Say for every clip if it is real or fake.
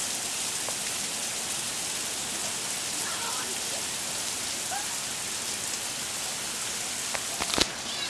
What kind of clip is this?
real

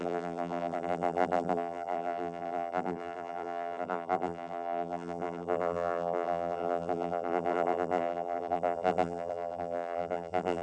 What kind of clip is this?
fake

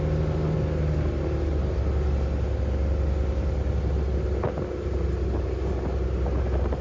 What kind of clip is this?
real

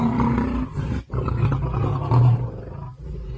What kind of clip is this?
real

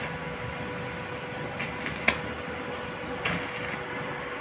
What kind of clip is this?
real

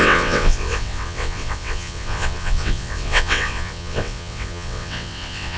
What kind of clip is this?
fake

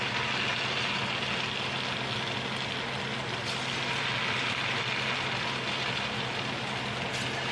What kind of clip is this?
real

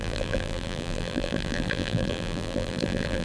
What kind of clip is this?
fake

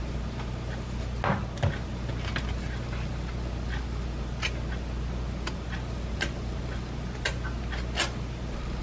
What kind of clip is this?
real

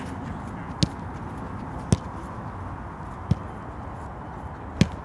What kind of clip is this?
real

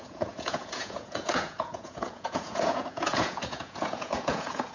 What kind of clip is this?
fake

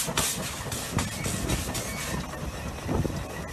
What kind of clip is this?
real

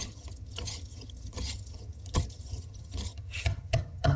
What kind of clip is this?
fake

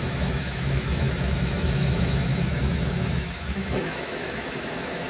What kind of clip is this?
fake